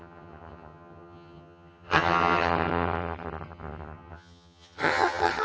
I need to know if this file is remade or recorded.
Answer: remade